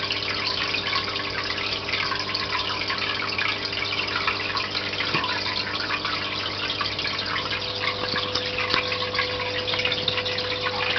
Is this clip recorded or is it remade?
recorded